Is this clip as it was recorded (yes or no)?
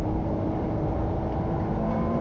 no